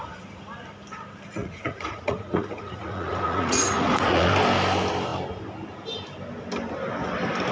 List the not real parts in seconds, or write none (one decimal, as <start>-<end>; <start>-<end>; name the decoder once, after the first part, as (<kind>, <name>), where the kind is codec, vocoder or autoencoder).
1.4-4.3 (vocoder, Vocos)